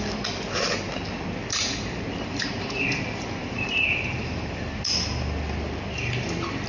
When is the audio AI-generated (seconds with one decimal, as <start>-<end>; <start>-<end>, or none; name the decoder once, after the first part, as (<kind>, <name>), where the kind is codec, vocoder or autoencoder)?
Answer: 1.4-4.8 (vocoder, BigVGAN v2)